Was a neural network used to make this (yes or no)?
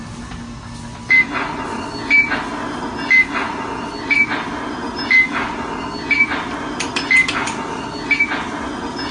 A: no